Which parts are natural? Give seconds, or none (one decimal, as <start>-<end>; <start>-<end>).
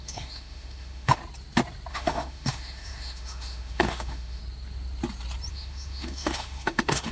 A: 1.2-1.9; 4.4-5.5